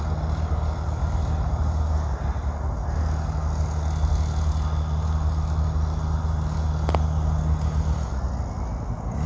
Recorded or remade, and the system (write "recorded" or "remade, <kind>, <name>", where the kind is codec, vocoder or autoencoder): recorded